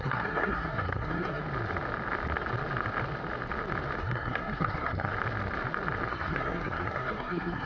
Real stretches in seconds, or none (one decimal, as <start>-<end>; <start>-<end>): 1.4-4.0; 5.1-6.1